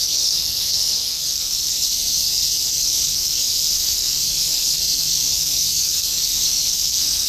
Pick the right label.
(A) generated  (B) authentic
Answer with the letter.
A